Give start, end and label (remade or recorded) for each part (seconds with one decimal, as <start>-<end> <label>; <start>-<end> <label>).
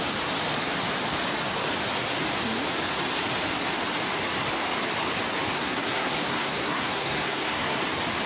0.0-5.5 recorded; 5.5-7.8 remade; 7.8-8.3 recorded